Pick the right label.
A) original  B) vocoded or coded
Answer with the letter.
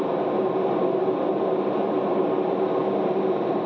A